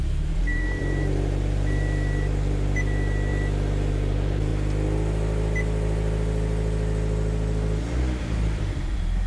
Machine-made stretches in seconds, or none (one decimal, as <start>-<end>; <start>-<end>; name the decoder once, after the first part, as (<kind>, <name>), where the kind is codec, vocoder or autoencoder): 0.0-3.3 (vocoder, BigVGAN v2); 3.9-4.5; 8.2-9.3